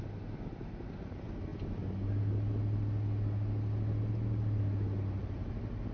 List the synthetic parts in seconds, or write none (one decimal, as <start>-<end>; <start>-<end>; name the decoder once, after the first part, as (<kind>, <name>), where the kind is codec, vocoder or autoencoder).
none